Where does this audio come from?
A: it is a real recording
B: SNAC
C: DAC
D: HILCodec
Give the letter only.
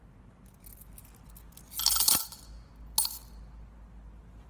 A